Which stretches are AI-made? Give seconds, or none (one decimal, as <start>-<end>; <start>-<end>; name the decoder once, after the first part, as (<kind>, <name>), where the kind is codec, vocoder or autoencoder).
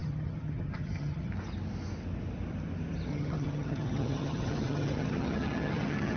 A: 0.0-1.3 (vocoder, HiFi-GAN); 3.1-6.2